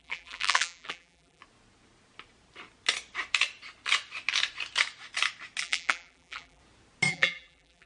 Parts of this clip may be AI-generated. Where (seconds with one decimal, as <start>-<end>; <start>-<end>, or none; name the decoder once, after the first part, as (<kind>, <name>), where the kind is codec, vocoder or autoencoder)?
0.0-1.4 (vocoder, BigVGAN v2); 5.6-6.6; 7.1-7.9